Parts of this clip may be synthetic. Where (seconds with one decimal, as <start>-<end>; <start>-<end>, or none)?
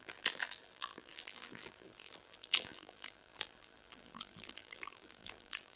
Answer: 0.0-5.8